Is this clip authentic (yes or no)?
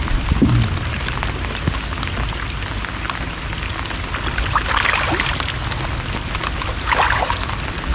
yes